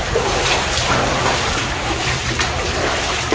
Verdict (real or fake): fake